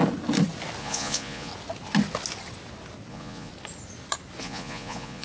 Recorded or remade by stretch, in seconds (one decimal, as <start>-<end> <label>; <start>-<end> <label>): 0.0-0.8 recorded; 0.8-1.5 remade; 1.5-3.1 recorded; 3.1-3.5 remade; 3.5-4.4 recorded; 4.4-5.2 remade